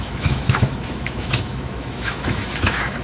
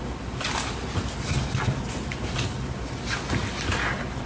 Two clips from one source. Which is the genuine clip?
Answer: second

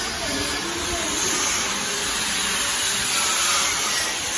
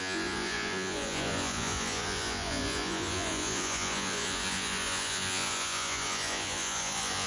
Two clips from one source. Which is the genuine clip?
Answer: first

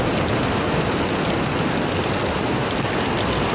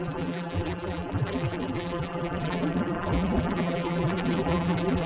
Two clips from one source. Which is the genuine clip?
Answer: first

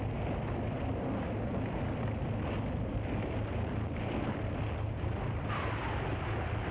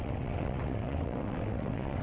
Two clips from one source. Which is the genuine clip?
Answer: first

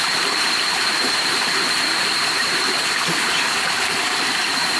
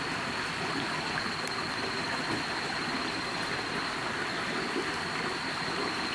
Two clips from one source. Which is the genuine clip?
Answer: second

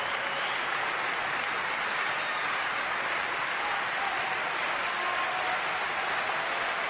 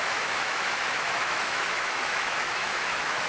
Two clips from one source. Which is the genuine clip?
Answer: first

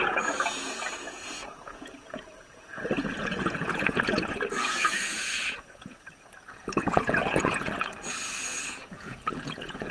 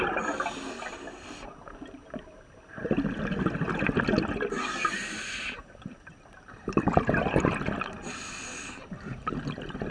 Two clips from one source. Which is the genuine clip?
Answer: second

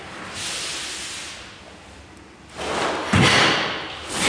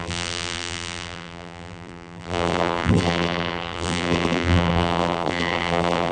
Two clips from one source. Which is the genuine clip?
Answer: first